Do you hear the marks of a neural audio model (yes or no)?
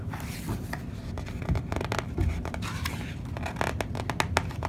no